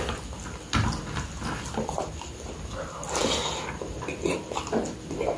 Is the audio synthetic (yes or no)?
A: no